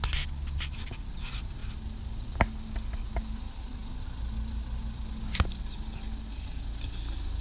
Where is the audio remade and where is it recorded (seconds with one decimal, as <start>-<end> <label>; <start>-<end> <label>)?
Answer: 0.0-7.4 recorded